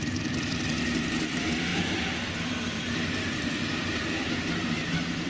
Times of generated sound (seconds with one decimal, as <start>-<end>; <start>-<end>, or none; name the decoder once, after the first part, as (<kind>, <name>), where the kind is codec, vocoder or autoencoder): 0.0-5.3 (vocoder, BigVGAN v2)

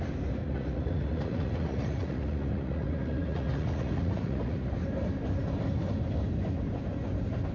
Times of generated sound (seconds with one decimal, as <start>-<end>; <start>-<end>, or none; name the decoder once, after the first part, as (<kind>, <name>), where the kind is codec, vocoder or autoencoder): 0.4-4.7 (vocoder, Vocos)

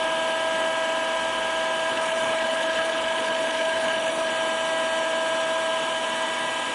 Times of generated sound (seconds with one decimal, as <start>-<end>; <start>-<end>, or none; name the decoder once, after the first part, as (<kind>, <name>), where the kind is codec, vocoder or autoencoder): 1.9-4.3 (codec, HILCodec)

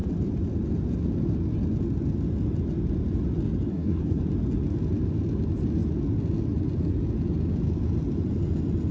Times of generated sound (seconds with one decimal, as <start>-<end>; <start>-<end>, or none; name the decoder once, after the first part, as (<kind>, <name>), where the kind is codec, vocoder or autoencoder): 3.7-4.2 (codec, SNAC)